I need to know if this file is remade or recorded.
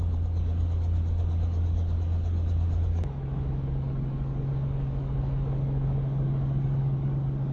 remade